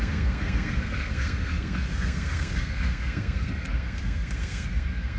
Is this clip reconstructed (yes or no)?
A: yes